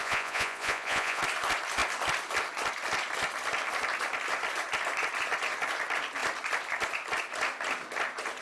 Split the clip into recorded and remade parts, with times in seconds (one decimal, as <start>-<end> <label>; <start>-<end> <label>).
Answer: 0.0-1.2 remade; 1.2-8.4 recorded